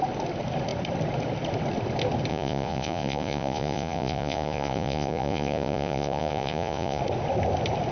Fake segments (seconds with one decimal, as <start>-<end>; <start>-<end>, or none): 2.3-7.0